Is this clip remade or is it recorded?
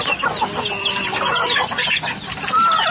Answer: recorded